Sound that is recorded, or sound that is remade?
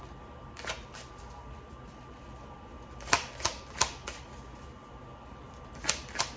recorded